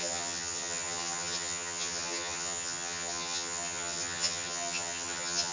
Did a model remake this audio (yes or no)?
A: yes